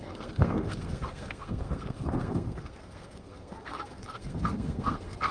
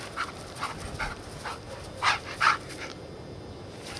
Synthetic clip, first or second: first